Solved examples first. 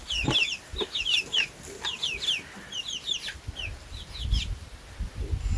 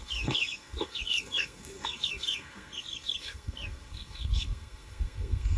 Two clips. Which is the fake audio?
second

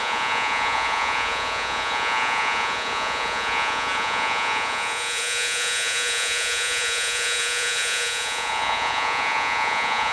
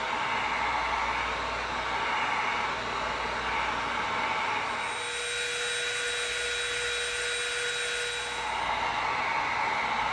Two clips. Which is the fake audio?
first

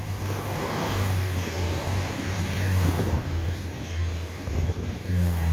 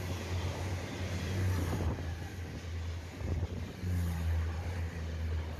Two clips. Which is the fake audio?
first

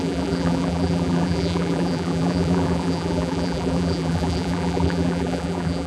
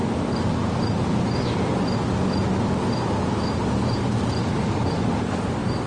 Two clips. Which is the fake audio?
first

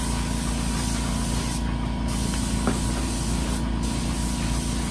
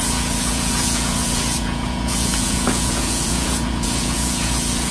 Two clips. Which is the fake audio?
second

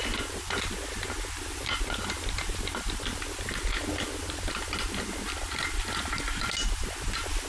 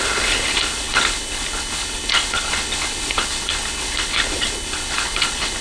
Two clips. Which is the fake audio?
second